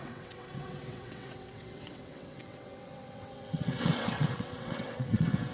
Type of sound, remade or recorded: remade